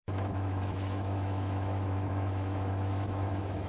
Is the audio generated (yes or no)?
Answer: yes